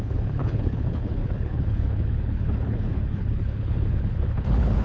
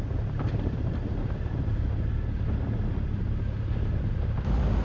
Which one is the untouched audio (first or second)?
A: second